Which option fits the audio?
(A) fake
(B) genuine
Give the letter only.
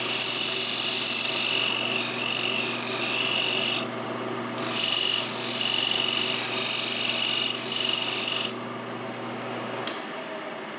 B